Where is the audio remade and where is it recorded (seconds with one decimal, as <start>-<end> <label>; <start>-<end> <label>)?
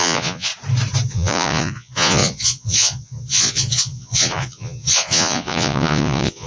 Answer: 0.0-0.5 remade; 0.5-1.1 recorded; 1.1-6.5 remade